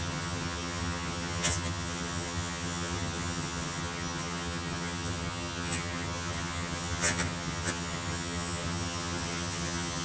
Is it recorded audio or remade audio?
remade